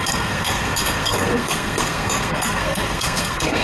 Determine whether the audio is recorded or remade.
remade